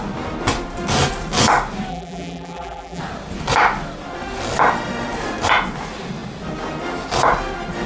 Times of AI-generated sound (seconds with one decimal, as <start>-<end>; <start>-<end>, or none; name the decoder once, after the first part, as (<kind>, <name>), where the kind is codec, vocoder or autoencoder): 1.9-3.0 (vocoder, BigVGAN v2)